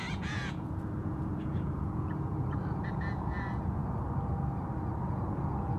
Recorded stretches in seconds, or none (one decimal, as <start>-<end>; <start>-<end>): 3.8-5.0